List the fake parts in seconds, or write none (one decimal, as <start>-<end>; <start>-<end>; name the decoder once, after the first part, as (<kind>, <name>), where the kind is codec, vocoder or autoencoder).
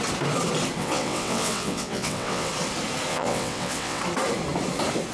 0.8-2.5 (vocoder, WaveNeXt); 3.1-4.0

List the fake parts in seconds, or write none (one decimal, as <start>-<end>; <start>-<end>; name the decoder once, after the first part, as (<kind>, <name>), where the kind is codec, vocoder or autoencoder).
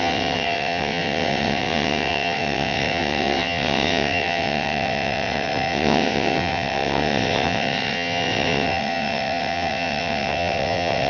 0.0-11.1 (vocoder, WaveNeXt)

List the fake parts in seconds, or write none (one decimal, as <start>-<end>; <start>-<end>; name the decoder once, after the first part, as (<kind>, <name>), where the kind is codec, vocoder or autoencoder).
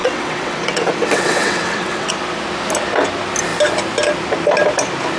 0.0-2.1 (vocoder, WaveNeXt)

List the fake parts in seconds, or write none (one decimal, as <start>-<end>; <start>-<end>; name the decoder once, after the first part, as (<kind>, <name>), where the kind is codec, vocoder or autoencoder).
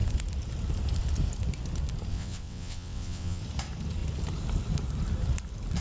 2.1-3.4 (vocoder, WaveNeXt)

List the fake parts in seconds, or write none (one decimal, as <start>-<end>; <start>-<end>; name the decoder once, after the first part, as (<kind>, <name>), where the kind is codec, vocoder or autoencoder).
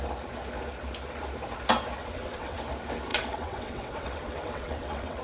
2.0-2.6 (vocoder, WaveNeXt); 3.1-5.2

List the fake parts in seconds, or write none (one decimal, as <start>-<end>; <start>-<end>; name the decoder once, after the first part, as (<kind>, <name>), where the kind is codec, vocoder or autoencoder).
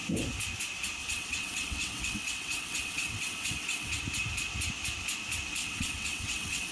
1.0-4.0 (vocoder, WaveNeXt); 5.6-6.7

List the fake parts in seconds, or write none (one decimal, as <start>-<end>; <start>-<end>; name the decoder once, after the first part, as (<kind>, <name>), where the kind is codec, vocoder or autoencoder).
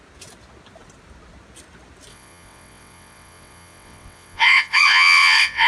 2.1-5.7 (vocoder, WaveNeXt)